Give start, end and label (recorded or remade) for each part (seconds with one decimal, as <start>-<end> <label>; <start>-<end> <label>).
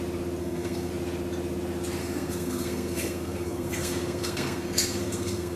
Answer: 0.0-0.4 recorded; 0.4-0.9 remade; 0.9-2.0 recorded; 2.0-5.6 remade